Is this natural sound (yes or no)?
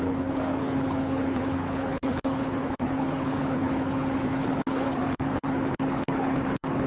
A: no